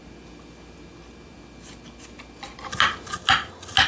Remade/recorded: recorded